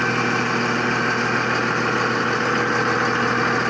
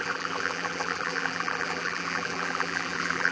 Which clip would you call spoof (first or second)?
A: second